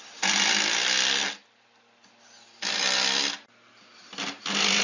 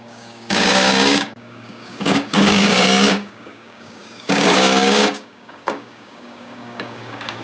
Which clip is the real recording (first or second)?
first